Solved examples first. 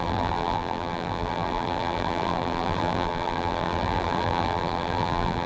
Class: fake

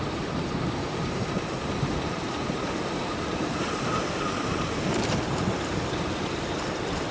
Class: fake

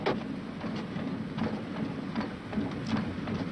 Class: real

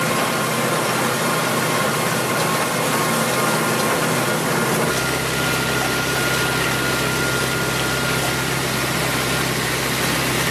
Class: real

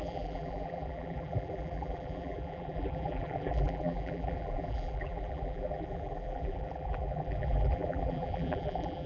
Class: fake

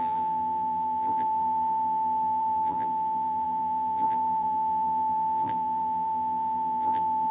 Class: fake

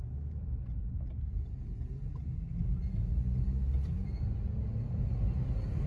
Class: real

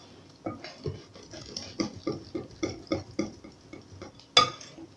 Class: real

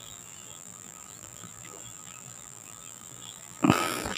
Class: fake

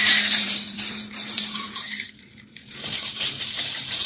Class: fake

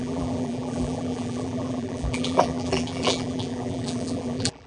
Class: fake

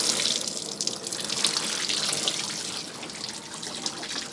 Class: real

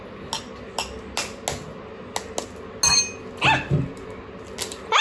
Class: real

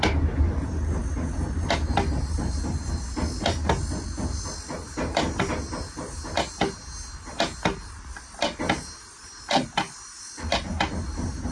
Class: real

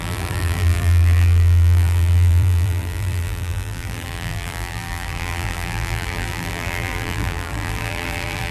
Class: fake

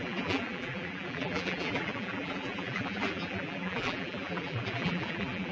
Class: fake